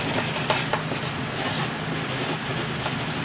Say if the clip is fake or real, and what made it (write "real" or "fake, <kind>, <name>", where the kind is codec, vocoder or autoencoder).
real